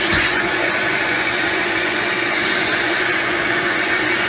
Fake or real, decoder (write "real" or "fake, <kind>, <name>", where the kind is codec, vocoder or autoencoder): fake, vocoder, Vocos